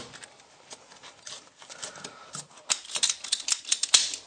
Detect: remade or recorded recorded